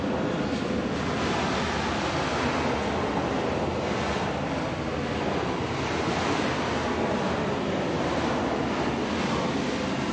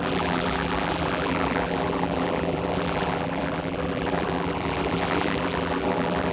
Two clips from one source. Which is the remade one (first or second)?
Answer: second